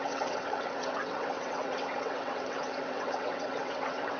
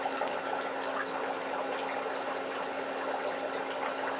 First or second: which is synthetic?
first